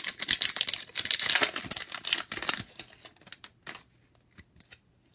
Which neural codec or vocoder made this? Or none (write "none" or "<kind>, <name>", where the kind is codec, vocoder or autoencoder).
none